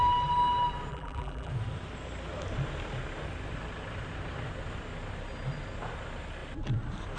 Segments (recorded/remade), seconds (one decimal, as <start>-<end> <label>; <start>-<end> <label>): 0.0-0.9 recorded; 0.9-1.5 remade; 1.5-7.2 recorded